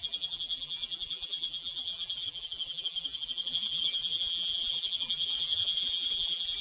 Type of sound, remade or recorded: remade